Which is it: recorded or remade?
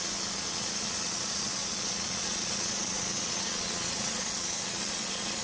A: remade